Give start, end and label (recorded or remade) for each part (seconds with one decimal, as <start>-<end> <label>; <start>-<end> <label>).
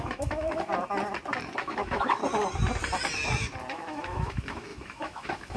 0.0-0.7 remade; 0.7-1.6 recorded; 1.6-2.2 remade; 2.2-3.7 recorded; 3.7-5.6 remade